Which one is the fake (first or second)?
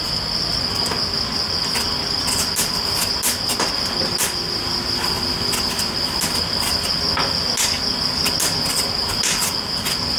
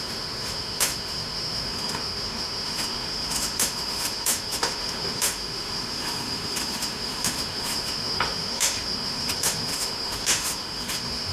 second